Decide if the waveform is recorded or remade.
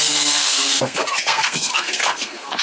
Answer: remade